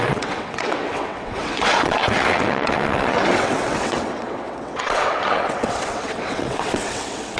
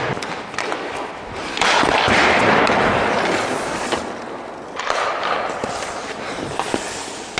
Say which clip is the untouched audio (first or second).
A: second